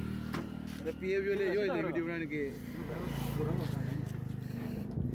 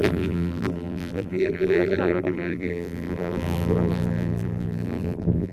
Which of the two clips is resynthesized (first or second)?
second